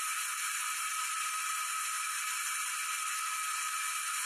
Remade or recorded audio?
remade